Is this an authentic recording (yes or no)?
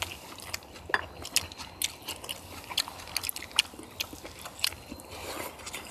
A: yes